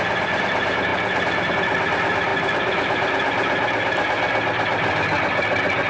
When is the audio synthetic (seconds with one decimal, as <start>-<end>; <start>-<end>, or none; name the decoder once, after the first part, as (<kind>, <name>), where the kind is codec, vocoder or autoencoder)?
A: none